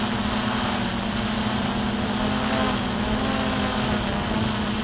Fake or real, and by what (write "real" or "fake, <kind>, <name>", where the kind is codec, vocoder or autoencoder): real